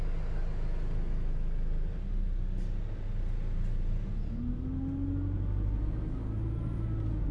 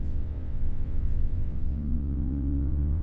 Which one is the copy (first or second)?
second